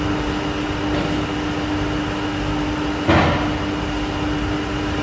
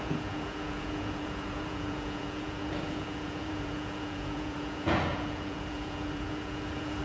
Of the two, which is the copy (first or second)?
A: second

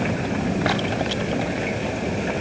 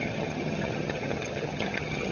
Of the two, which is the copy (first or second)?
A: second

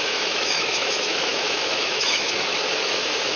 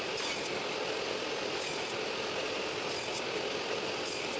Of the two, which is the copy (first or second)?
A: first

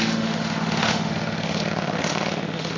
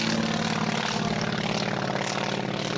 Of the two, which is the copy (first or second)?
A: first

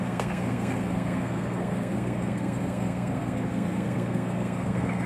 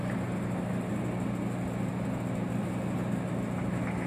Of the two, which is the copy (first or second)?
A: first